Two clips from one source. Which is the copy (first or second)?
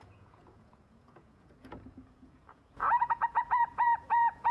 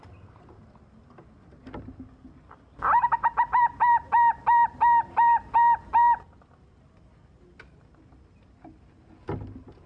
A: first